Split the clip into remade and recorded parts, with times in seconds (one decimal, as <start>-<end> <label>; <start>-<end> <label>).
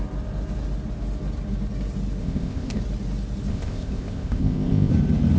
0.0-2.2 recorded; 2.2-2.8 remade; 2.8-3.5 recorded; 3.5-4.9 remade; 4.9-5.4 recorded